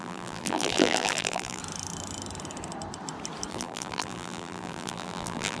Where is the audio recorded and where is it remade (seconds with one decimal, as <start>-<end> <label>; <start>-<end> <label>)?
0.0-1.6 remade; 1.6-3.5 recorded; 3.5-5.6 remade

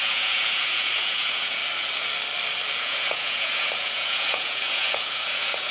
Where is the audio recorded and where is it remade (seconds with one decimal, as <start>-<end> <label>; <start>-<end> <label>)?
0.0-1.6 remade; 1.6-2.8 recorded; 2.8-5.7 remade

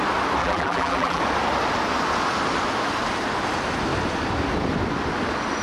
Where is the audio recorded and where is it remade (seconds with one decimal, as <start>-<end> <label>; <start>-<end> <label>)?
0.0-0.4 recorded; 0.4-1.2 remade; 1.2-5.6 recorded

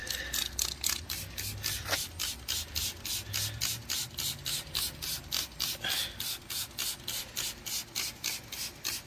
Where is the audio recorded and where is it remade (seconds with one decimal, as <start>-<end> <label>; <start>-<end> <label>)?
0.0-9.1 recorded

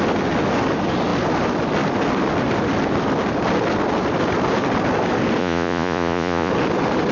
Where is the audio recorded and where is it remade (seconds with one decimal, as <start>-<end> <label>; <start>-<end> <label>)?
0.0-5.4 recorded; 5.4-6.5 remade; 6.5-7.1 recorded

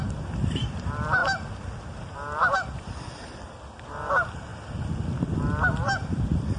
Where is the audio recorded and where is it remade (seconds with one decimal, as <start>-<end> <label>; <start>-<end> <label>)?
0.0-4.5 remade; 4.5-5.1 recorded; 5.1-6.6 remade